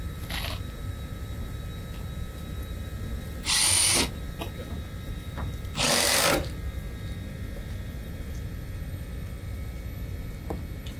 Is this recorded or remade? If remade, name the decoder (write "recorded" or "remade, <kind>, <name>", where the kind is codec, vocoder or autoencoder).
recorded